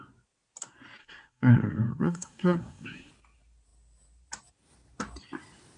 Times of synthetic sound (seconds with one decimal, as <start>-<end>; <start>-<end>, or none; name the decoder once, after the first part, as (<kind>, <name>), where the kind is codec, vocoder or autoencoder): 1.0-3.1 (codec, SNAC)